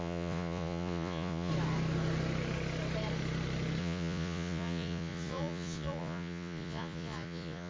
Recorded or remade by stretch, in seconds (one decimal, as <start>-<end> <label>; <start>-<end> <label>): 0.0-1.5 remade; 1.5-3.8 recorded; 3.8-7.7 remade